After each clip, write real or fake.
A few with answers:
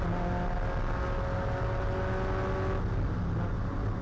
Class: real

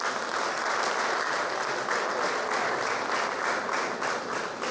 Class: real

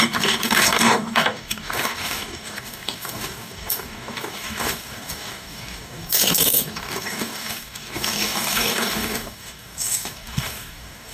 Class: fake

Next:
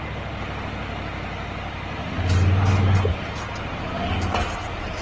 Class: real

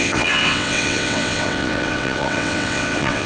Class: fake